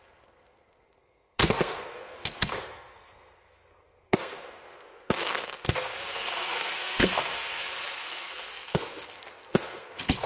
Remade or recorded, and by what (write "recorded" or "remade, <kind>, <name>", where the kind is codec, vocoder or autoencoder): remade, codec, SNAC